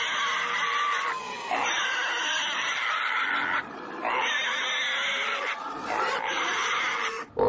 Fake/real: real